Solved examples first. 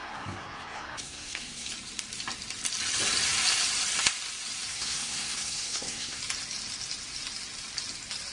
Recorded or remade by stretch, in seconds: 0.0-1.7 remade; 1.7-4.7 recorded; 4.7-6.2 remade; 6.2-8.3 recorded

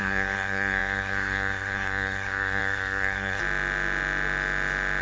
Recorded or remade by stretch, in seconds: 0.0-3.4 remade; 3.4-5.0 recorded

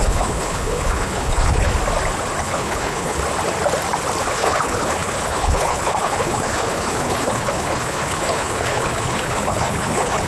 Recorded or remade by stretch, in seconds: 0.0-1.7 remade; 1.7-2.4 recorded; 2.4-3.2 remade; 3.2-4.2 recorded; 4.2-10.3 remade

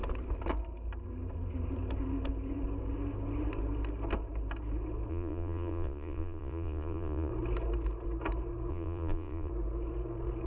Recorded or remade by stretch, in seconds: 0.0-5.1 recorded; 5.1-7.3 remade; 7.3-8.7 recorded; 8.7-9.5 remade; 9.5-10.5 recorded

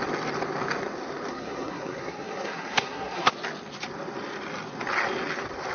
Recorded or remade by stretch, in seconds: 0.0-1.3 recorded; 1.3-3.3 remade; 3.3-5.7 recorded

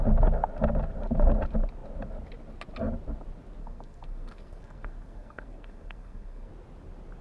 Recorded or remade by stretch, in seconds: 0.0-3.6 recorded; 3.6-6.5 remade; 6.5-7.2 recorded

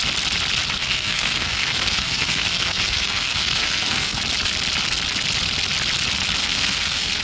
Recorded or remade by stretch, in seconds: 0.0-0.8 recorded; 0.8-4.2 remade; 4.2-6.4 recorded; 6.4-7.2 remade

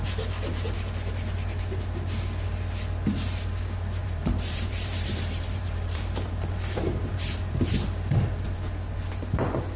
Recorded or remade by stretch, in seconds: 0.0-4.0 recorded; 4.0-7.7 remade; 7.7-9.8 recorded